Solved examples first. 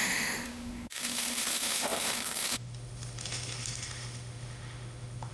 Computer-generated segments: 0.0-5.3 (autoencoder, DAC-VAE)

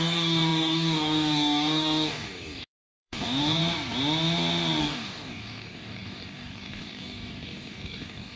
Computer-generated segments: 0.0-3.6 (codec, DAC); 4.8-8.4

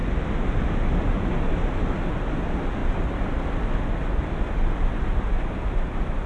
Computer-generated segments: none

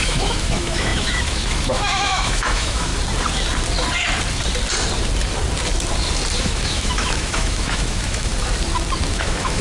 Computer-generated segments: 0.0-2.9 (autoencoder, DAC-VAE); 6.4-8.3; 9.1-9.6